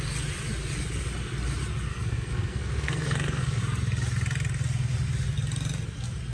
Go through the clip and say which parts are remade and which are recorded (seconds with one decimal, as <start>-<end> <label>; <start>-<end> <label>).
0.0-1.9 recorded; 1.9-3.6 remade; 3.6-6.3 recorded